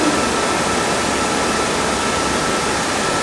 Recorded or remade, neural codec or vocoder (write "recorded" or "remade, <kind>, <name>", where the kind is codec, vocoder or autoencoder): recorded